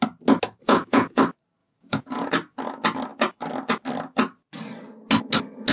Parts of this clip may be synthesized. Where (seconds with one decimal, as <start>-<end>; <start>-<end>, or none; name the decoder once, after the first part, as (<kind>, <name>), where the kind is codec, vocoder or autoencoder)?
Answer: 0.6-1.2 (vocoder, Vocos); 1.6-2.3